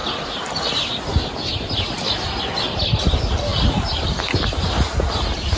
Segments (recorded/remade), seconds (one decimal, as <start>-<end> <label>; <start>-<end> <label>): 0.0-5.6 recorded